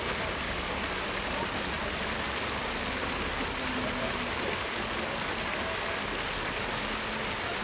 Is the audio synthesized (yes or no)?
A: no